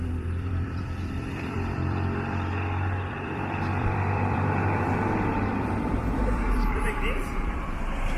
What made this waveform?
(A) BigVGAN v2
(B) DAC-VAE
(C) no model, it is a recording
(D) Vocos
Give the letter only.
A